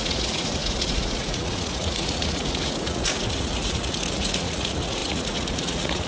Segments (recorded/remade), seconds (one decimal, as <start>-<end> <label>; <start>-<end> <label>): 0.0-6.1 remade

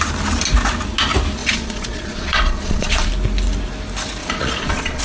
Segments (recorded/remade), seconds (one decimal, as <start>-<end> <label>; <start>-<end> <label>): 0.0-1.4 recorded; 1.4-3.1 remade; 3.1-4.2 recorded; 4.2-5.0 remade

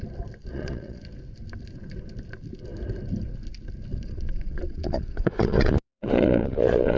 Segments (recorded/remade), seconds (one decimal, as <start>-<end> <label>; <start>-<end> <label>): 0.0-0.4 recorded; 0.4-1.0 remade; 1.0-3.9 recorded; 3.9-7.0 remade